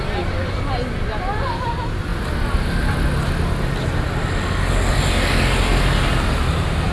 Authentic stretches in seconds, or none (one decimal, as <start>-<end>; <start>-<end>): 0.0-6.9